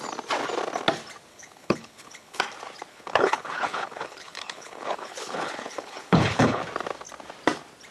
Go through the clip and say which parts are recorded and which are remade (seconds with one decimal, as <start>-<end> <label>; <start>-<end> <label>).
0.0-1.3 recorded; 1.3-2.4 remade; 2.4-2.9 recorded; 2.9-6.6 remade; 6.6-7.9 recorded